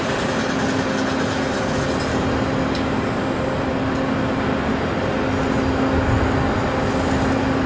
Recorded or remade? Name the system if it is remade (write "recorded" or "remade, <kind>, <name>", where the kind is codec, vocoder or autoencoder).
recorded